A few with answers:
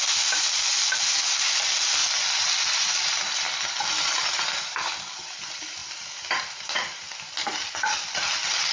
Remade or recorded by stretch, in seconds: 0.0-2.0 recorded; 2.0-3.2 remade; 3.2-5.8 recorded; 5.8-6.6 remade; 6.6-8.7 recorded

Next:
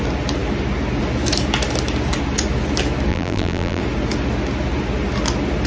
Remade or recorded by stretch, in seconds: 0.0-3.1 recorded; 3.1-3.8 remade; 3.8-5.7 recorded